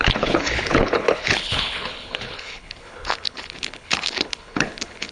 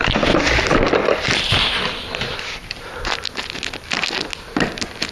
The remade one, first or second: first